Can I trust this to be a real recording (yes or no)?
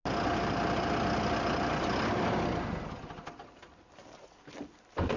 yes